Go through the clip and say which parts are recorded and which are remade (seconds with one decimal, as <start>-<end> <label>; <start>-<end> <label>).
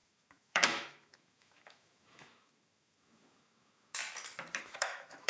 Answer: 0.0-4.0 remade; 4.0-4.6 recorded; 4.6-5.3 remade